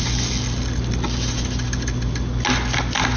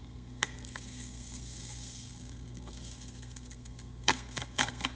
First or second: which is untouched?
first